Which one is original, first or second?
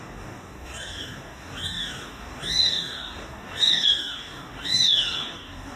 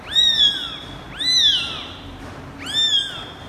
second